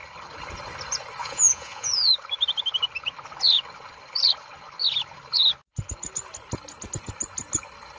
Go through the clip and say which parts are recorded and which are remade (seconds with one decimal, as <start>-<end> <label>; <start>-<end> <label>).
0.0-1.2 recorded; 1.2-2.1 remade; 2.1-8.0 recorded